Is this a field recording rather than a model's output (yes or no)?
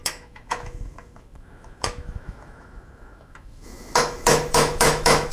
no